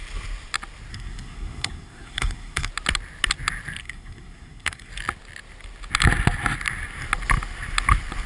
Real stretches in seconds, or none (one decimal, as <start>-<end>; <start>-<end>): 0.0-0.9; 2.7-3.8; 4.9-8.3